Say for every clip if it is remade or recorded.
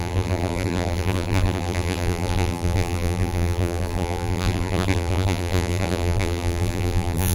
remade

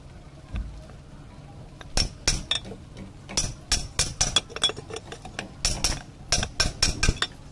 recorded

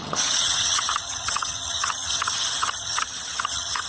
remade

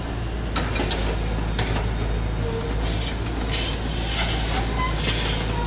recorded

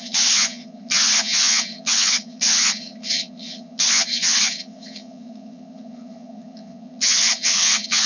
remade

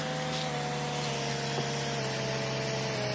recorded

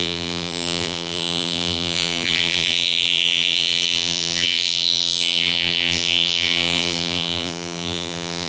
remade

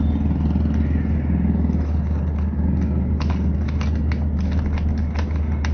recorded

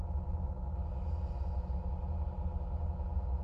recorded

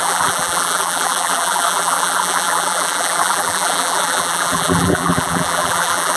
remade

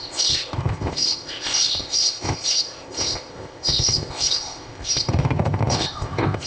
remade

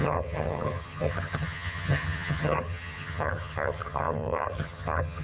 remade